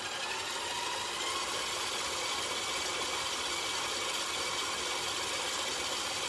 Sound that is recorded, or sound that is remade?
recorded